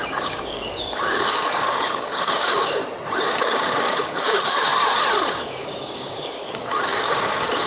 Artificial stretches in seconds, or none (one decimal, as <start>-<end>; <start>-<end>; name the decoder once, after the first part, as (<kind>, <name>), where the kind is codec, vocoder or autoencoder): 0.0-2.8 (codec, DAC); 3.3-4.7; 5.3-7.7